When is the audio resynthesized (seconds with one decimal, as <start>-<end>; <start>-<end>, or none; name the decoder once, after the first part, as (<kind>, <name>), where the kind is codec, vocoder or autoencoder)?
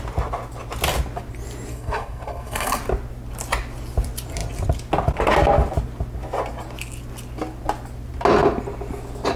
1.7-2.8 (codec, SNAC)